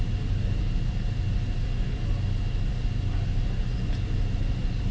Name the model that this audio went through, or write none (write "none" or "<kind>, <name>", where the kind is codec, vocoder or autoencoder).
none